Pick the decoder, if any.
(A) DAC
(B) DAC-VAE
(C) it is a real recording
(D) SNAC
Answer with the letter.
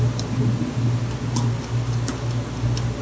C